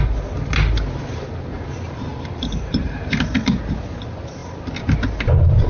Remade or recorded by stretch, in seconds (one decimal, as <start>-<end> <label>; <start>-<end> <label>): 0.0-2.1 recorded; 2.1-3.6 remade; 3.6-5.7 recorded